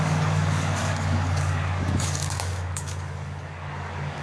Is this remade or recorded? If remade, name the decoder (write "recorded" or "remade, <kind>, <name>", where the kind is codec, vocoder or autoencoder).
remade, codec, DAC